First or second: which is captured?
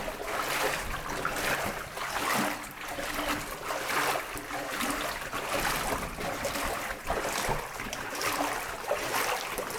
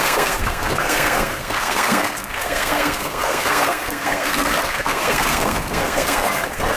first